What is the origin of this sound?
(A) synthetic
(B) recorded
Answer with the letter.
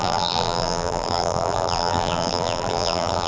A